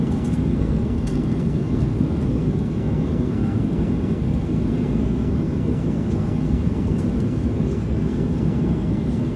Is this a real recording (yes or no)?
no